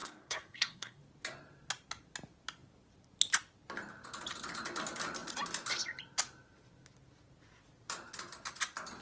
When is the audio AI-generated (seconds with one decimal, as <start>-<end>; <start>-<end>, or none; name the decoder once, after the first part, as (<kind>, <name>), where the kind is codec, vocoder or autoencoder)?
0.0-1.0 (codec, SNAC)